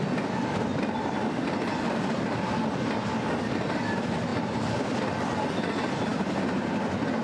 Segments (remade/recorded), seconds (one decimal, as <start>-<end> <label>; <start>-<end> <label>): 0.0-7.2 recorded